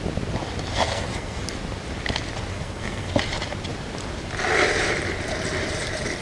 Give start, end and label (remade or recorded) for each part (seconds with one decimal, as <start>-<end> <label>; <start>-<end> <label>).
0.0-0.7 recorded; 0.7-1.4 remade; 1.4-2.5 recorded; 2.5-3.1 remade; 3.1-6.2 recorded

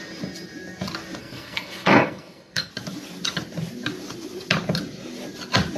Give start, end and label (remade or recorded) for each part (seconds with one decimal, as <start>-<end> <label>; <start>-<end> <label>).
0.0-1.2 recorded; 1.2-2.7 remade; 2.7-5.8 recorded